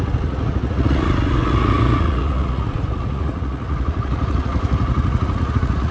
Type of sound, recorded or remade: remade